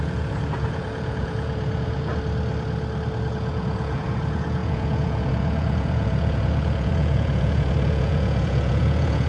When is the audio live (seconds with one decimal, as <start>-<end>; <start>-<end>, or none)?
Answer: 2.1-3.3